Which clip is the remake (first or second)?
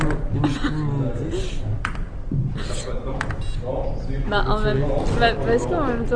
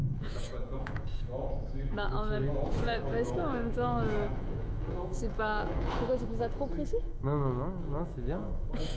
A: second